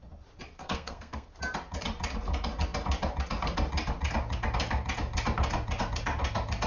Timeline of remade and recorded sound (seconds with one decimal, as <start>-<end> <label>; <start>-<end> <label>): 0.0-0.6 recorded; 0.6-1.3 remade; 1.3-6.7 recorded